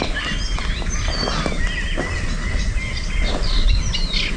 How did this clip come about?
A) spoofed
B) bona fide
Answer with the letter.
B